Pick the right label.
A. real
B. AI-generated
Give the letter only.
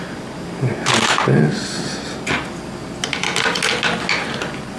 A